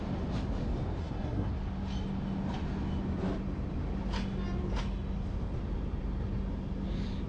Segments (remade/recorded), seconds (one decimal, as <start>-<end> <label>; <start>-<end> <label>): 0.0-1.0 recorded; 1.0-1.5 remade; 1.5-7.3 recorded